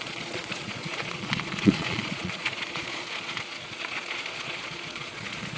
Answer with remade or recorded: remade